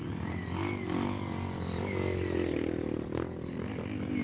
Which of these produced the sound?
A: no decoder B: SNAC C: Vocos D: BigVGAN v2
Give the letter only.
A